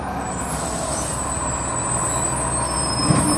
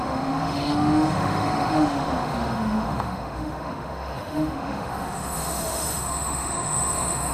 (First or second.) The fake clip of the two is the second